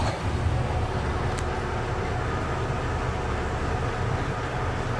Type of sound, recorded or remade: recorded